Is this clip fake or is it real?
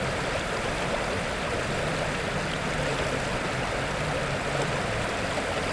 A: real